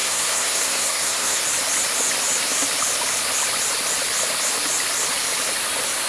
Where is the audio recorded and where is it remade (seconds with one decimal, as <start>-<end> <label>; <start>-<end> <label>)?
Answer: 0.0-1.4 remade; 1.4-6.1 recorded